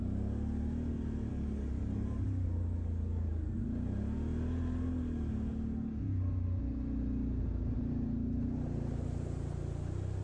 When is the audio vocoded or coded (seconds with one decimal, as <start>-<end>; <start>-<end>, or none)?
1.3-3.3